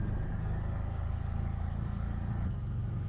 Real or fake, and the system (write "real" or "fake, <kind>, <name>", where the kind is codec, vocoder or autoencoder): fake, codec, DAC